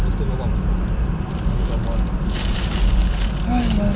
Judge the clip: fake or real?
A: real